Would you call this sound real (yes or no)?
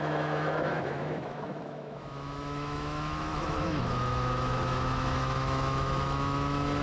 no